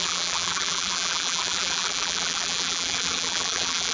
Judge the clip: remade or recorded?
remade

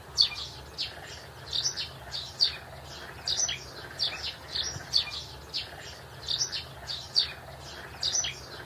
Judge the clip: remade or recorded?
recorded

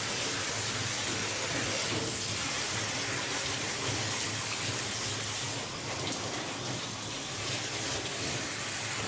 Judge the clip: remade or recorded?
recorded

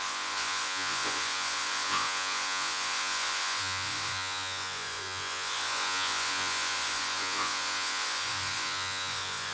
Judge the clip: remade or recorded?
remade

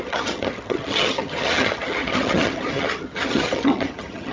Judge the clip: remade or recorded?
remade